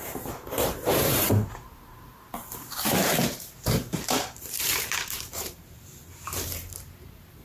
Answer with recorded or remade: remade